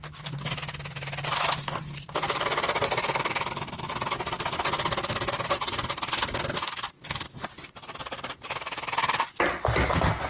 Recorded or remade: recorded